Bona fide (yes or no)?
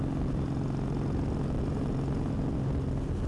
yes